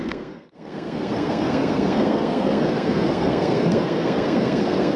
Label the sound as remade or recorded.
remade